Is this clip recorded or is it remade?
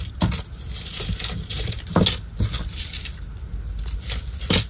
recorded